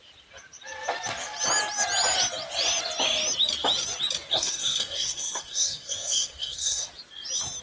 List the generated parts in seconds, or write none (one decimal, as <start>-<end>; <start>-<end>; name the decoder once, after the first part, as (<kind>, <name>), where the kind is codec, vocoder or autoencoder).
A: 4.3-6.9 (codec, SNAC)